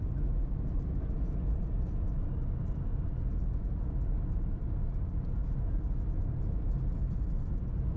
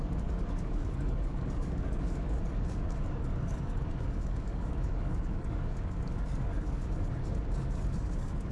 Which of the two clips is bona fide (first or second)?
first